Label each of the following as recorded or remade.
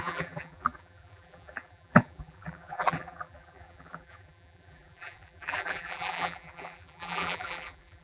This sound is remade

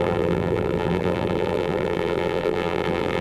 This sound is remade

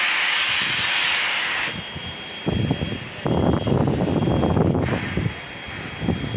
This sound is recorded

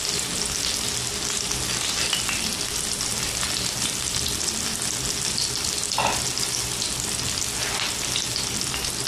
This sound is recorded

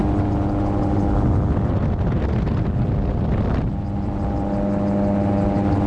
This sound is recorded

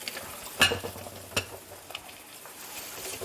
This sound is recorded